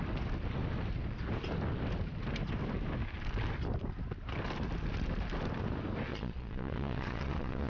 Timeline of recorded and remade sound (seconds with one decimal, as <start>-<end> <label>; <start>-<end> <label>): 0.0-6.1 recorded; 6.1-7.7 remade